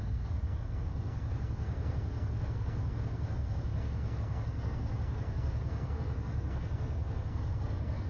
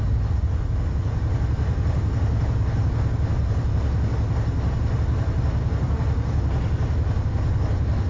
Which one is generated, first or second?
first